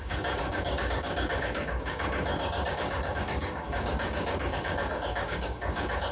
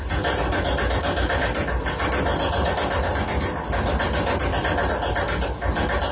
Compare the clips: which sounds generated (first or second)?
first